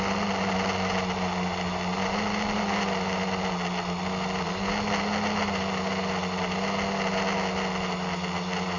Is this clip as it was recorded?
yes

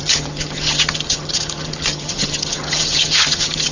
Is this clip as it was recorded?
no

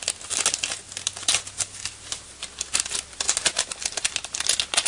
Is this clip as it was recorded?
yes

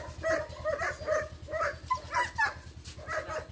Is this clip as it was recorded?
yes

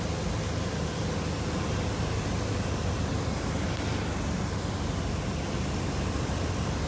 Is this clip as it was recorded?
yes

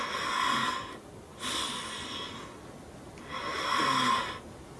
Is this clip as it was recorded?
yes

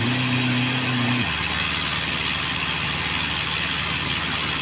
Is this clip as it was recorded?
yes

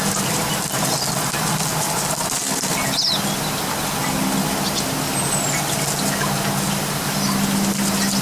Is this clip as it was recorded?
yes